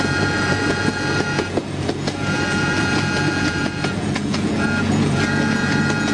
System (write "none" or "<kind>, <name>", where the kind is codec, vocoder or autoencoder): vocoder, Vocos